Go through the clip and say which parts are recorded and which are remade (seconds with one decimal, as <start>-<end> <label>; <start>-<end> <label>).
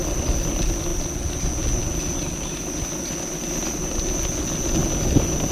0.0-5.5 recorded